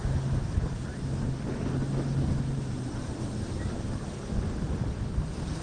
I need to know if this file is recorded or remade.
recorded